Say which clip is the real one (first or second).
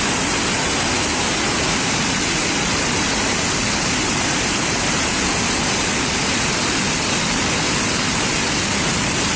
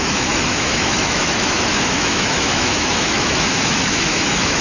first